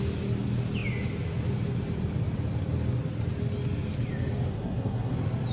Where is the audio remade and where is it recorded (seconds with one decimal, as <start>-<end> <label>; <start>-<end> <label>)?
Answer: 0.0-4.5 recorded; 4.5-5.1 remade; 5.1-5.5 recorded